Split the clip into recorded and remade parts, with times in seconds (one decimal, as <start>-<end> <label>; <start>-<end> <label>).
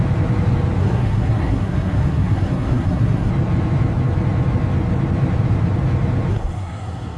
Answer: 0.0-0.8 recorded; 0.8-3.3 remade; 3.3-6.3 recorded; 6.3-7.2 remade